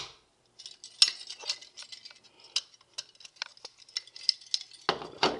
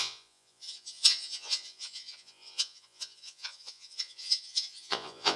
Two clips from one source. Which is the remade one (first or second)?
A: second